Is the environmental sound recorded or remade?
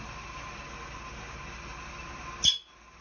recorded